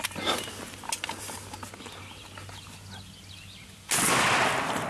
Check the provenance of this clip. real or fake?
real